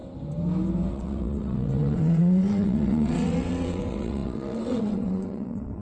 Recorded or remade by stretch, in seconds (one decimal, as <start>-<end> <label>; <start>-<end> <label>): 0.0-0.9 recorded; 0.9-5.8 remade